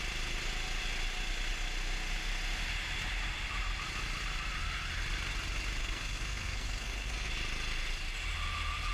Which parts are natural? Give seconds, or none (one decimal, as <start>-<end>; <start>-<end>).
0.0-5.8; 7.3-8.9